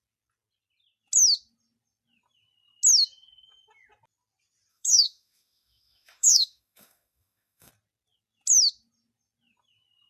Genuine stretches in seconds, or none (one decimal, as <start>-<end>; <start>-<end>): 0.0-4.7; 7.7-10.1